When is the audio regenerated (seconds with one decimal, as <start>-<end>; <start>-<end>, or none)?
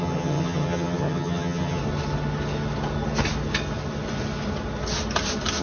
0.0-1.8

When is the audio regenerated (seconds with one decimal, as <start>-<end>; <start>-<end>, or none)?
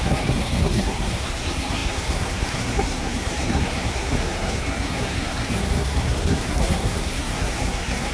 0.0-8.1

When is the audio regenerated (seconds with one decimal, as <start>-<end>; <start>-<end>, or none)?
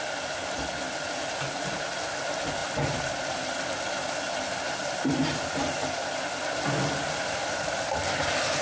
none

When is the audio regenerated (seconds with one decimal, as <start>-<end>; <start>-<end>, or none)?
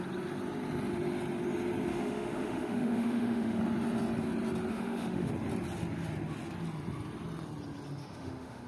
1.9-3.6; 4.7-5.3; 8.0-8.7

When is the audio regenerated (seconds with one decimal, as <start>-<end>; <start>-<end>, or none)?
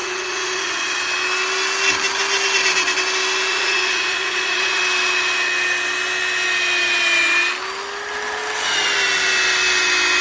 0.0-1.0; 3.5-4.8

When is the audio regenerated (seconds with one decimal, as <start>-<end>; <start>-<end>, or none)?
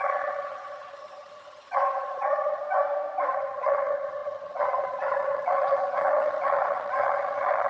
0.0-2.6; 3.3-7.7